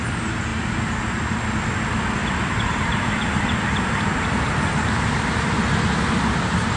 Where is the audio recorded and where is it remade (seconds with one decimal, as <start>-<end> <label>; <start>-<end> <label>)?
0.0-0.5 recorded; 0.5-1.5 remade; 1.5-2.2 recorded; 2.2-5.8 remade; 5.8-6.8 recorded